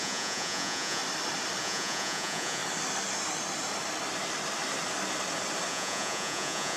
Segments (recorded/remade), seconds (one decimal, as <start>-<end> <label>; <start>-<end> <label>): 0.0-1.0 remade; 1.0-1.6 recorded; 1.6-2.6 remade; 2.6-5.7 recorded; 5.7-6.8 remade